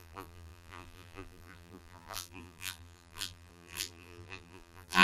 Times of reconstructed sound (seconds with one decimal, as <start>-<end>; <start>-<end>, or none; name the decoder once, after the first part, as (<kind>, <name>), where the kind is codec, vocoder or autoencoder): 0.0-5.0 (vocoder, BigVGAN v2)